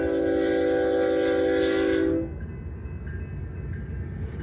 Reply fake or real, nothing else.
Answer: real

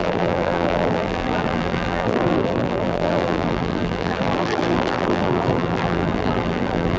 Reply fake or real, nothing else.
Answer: fake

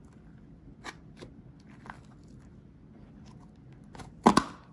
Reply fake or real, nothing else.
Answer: real